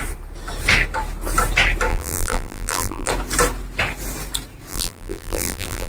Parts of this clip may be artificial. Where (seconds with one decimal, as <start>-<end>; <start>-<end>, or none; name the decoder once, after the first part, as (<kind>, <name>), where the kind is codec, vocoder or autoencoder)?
1.9-3.1 (vocoder, BigVGAN v2); 4.7-5.9